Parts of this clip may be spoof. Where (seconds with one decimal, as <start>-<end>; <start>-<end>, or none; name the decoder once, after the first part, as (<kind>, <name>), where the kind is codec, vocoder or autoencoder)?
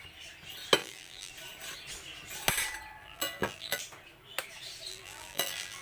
0.8-1.3 (vocoder, BigVGAN v2); 3.0-3.8; 4.9-5.8